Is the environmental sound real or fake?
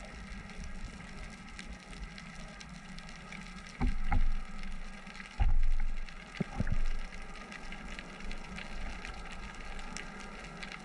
real